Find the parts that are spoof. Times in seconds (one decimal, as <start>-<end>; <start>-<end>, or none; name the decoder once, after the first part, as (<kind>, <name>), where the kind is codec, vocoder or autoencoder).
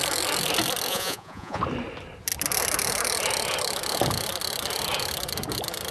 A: 0.9-1.6 (vocoder, Vocos)